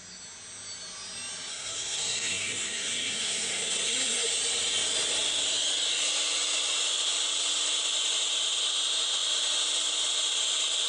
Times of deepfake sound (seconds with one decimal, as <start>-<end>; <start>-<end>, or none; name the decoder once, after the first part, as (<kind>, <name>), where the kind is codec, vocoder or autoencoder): 1.5-4.3 (codec, SNAC)